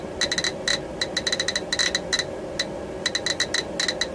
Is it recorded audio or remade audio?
recorded